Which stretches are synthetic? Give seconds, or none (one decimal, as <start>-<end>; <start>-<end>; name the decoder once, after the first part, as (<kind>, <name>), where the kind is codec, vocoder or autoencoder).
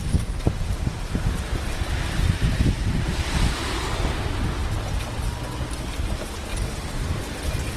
none